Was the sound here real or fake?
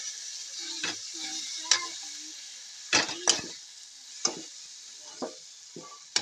real